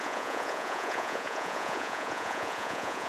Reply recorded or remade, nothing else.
remade